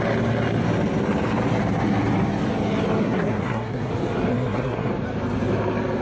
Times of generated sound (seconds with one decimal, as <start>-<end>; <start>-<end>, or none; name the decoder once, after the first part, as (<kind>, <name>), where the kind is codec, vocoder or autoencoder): 3.0-3.9 (codec, SNAC); 4.3-4.9